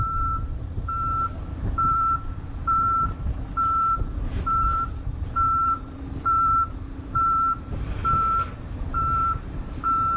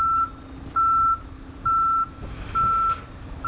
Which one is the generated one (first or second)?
first